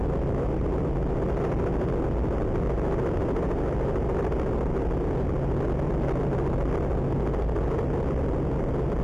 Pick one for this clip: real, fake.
real